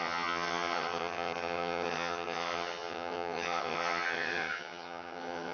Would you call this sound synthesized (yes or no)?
yes